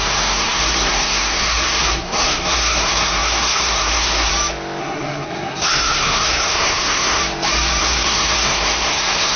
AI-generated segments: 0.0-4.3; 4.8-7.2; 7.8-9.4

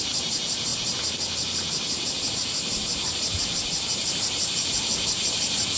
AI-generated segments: 0.0-5.8

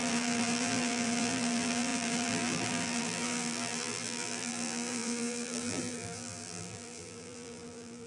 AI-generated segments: 0.0-8.1

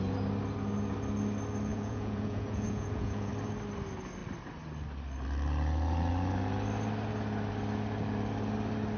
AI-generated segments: 1.7-3.3

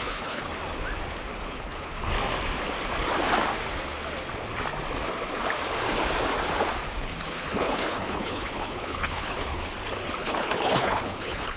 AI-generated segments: 0.0-0.5; 1.5-2.1; 7.0-9.6; 10.2-11.6

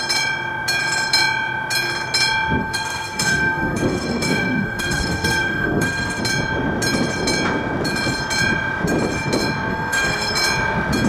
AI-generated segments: 2.6-6.2; 9.7-10.3

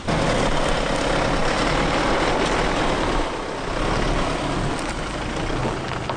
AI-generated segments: none